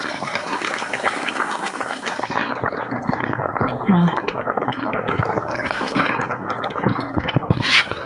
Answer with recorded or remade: remade